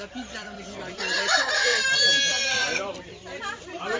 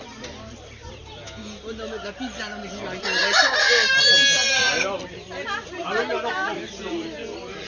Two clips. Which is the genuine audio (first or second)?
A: second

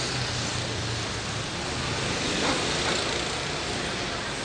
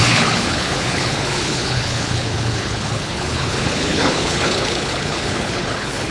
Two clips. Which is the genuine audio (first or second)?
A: first